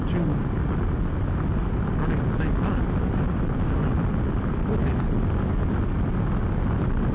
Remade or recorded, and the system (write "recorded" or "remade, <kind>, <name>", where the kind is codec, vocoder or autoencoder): recorded